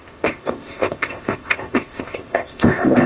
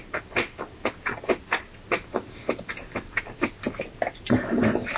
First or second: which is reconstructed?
first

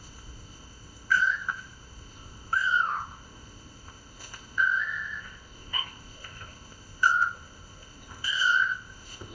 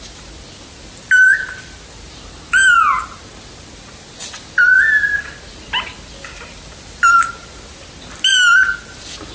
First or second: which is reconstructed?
first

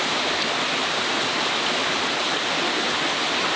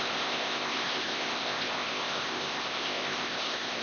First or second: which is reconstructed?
second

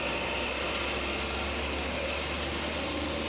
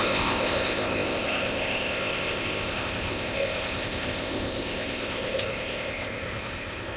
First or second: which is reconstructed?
second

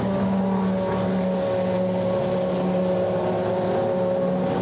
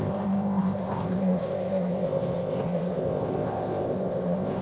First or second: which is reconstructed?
second